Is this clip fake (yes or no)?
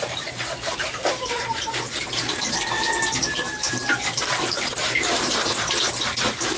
yes